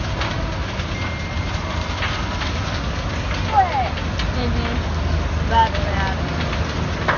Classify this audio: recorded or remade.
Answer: recorded